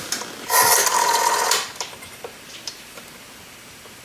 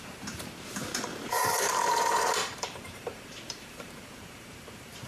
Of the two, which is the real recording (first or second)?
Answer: first